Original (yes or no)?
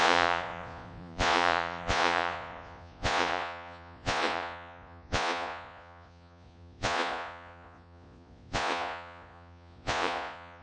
no